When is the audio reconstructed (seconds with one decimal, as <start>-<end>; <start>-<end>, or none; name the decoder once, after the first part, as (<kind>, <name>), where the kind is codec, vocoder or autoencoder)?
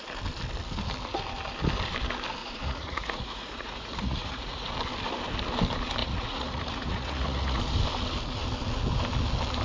2.4-4.7 (vocoder, Vocos); 6.0-7.6